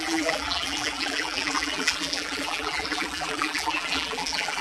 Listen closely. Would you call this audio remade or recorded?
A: remade